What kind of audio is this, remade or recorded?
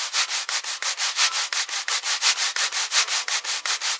recorded